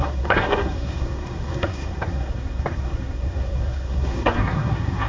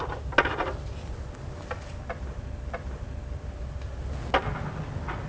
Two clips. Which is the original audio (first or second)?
second